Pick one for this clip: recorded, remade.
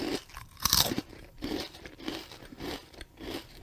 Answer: remade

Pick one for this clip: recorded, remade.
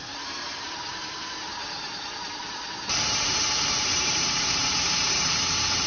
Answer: remade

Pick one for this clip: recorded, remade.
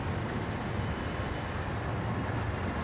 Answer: recorded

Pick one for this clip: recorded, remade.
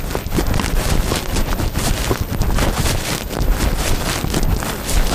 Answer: remade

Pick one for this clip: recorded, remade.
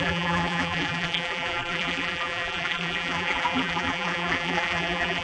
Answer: remade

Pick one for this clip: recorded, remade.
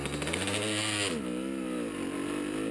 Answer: recorded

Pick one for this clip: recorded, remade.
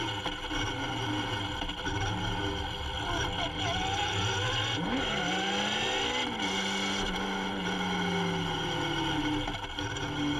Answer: recorded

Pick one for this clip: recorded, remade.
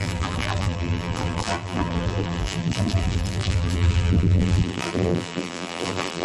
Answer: remade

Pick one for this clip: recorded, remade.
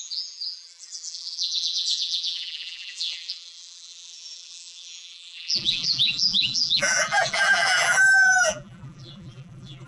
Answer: remade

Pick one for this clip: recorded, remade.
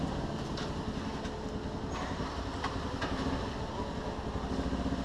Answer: recorded